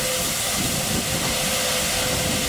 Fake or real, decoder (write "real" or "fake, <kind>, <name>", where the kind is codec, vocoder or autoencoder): real